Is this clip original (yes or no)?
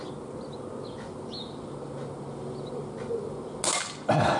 yes